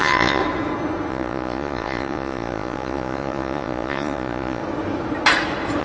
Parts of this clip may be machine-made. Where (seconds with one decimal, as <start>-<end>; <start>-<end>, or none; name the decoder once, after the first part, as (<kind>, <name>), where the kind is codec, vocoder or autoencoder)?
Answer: 0.0-0.4 (vocoder, Vocos); 1.1-4.6